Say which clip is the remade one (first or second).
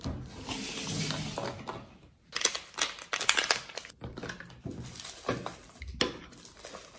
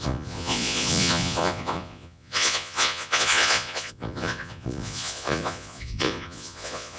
second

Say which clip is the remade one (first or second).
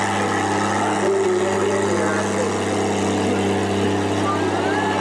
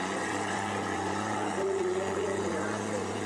second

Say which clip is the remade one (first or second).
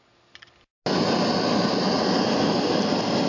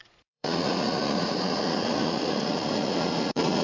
second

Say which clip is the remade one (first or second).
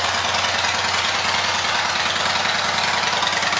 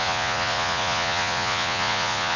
second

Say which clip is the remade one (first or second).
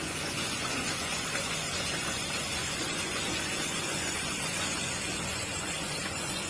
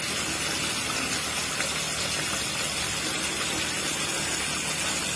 first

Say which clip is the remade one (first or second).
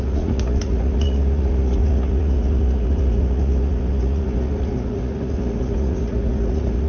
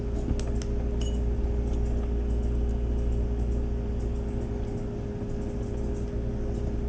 first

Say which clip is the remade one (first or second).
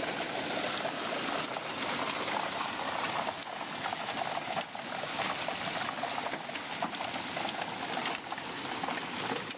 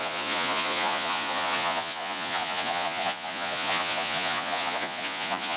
second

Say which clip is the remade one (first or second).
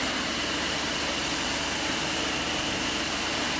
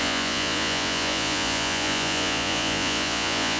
second